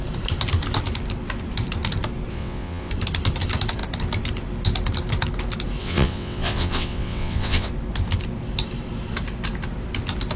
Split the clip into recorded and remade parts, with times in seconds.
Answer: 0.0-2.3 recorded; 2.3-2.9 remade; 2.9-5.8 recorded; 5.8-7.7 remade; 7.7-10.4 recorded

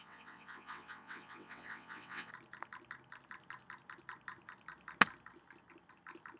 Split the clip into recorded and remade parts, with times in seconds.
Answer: 0.0-2.3 remade; 2.3-6.4 recorded

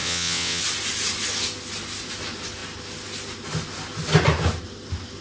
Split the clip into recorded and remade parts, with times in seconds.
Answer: 0.0-0.6 remade; 0.6-5.2 recorded

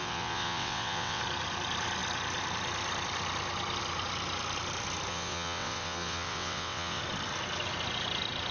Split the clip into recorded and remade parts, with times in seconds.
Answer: 0.0-1.2 remade; 1.2-5.1 recorded; 5.1-7.0 remade; 7.0-8.5 recorded

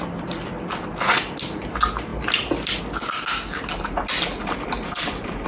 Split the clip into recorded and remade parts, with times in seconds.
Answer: 0.0-5.5 recorded

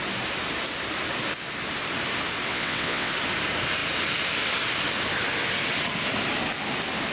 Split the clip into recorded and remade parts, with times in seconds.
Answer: 0.0-2.5 recorded; 2.5-3.1 remade; 3.1-7.1 recorded

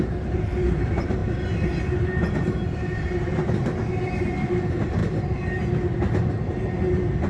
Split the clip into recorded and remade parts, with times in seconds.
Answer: 0.0-7.3 recorded